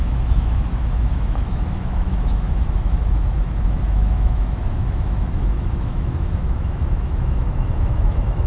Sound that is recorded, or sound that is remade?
remade